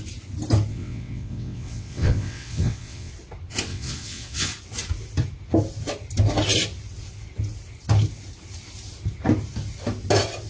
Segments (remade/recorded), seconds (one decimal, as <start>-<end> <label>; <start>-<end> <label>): 0.0-0.7 recorded; 0.7-3.1 remade; 3.1-3.7 recorded; 3.7-4.5 remade; 4.5-10.5 recorded